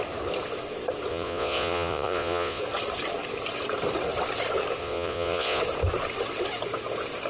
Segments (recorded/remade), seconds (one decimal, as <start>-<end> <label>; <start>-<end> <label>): 0.0-1.1 recorded; 1.1-2.6 remade; 2.6-4.8 recorded; 4.8-5.6 remade; 5.6-7.3 recorded